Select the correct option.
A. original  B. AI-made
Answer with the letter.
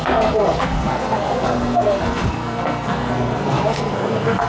B